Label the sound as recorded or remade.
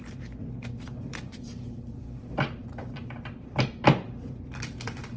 remade